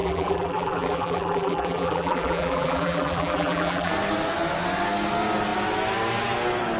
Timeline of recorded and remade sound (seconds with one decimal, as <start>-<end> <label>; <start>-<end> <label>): 0.0-3.9 remade; 3.9-6.8 recorded